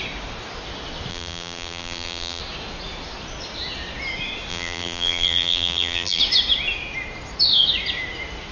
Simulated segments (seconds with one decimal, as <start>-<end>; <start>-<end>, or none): 1.1-2.4; 4.5-6.2